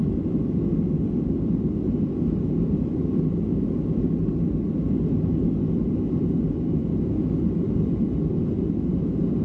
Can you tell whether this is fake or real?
real